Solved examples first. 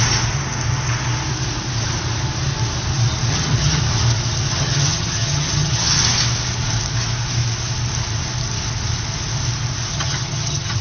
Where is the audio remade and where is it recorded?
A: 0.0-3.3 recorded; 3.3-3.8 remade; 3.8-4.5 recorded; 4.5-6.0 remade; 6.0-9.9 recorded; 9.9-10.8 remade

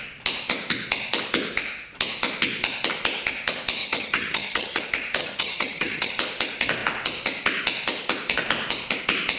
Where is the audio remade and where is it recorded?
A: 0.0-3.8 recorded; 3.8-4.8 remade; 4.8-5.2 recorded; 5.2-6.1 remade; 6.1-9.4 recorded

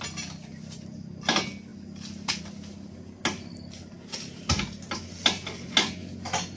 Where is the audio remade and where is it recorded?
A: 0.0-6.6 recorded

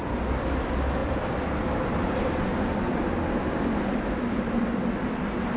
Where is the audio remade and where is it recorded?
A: 0.0-5.6 recorded

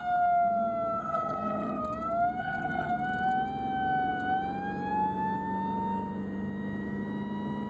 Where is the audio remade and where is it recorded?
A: 0.0-1.0 recorded; 1.0-1.8 remade; 1.8-2.4 recorded; 2.4-2.9 remade; 2.9-7.7 recorded

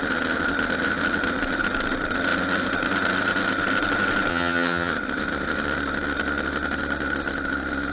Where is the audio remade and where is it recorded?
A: 0.0-4.3 recorded; 4.3-4.9 remade; 4.9-7.9 recorded